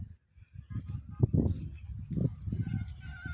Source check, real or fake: real